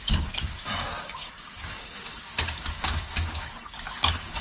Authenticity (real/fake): fake